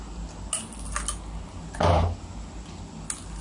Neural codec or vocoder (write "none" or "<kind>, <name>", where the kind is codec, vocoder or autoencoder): none